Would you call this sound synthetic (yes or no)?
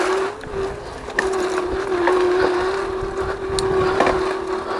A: no